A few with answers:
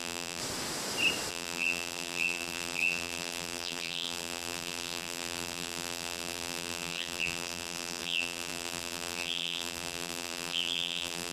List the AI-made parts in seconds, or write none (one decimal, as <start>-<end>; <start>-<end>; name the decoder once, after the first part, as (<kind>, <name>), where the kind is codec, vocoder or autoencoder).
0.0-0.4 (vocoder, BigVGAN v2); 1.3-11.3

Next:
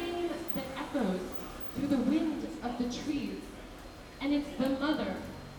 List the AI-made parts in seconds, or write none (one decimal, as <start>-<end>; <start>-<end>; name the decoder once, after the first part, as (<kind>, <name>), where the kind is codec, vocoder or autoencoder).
none

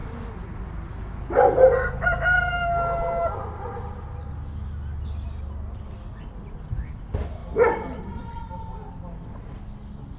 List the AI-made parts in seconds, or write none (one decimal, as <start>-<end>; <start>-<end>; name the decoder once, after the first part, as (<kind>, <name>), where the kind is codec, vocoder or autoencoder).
0.0-0.9 (vocoder, BigVGAN v2); 7.4-9.6

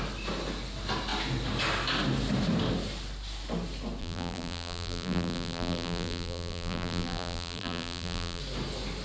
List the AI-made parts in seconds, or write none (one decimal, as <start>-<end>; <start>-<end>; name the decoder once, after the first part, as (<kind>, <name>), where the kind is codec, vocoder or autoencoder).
4.0-8.4 (vocoder, BigVGAN v2)

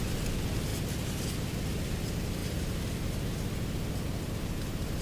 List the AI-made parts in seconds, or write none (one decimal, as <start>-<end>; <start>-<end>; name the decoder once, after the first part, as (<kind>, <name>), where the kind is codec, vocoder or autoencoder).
none